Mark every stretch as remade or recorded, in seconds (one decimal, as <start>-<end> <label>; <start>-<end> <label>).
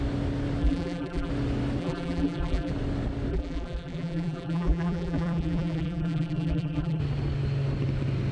0.0-0.6 recorded; 0.6-1.3 remade; 1.3-1.8 recorded; 1.8-2.7 remade; 2.7-3.3 recorded; 3.3-7.0 remade; 7.0-8.3 recorded